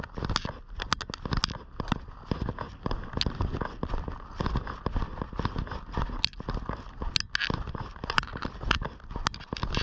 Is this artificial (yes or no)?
no